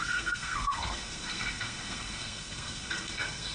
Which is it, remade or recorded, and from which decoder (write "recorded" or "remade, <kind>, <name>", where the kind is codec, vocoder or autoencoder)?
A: remade, codec, SNAC